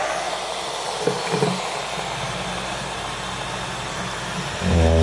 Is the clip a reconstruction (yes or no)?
no